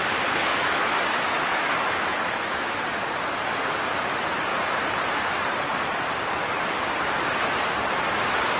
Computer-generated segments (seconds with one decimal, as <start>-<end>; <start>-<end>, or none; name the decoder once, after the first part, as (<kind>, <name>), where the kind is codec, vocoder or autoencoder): 0.5-2.8 (autoencoder, DAC-VAE)